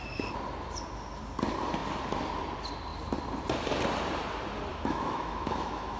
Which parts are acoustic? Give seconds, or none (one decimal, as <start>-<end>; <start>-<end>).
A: 0.0-4.7